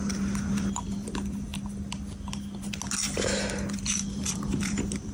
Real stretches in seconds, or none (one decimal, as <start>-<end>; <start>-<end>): 1.5-3.8